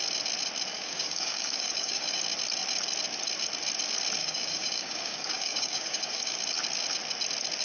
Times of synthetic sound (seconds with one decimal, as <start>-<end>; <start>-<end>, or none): 0.7-2.2; 4.2-6.4